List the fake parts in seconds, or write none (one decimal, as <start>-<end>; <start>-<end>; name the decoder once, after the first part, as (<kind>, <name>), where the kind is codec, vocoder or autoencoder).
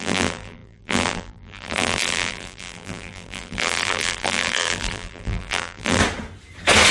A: 0.0-6.0 (vocoder, BigVGAN v2)